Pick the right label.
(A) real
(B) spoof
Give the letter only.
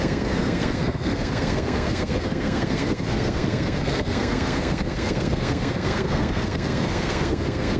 B